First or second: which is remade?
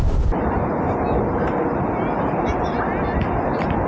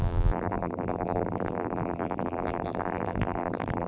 second